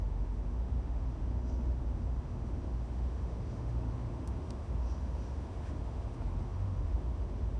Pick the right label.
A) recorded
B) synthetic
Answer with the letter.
B